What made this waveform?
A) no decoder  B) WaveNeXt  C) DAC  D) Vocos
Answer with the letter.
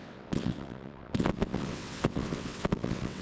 B